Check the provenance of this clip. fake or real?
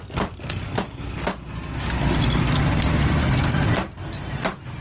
real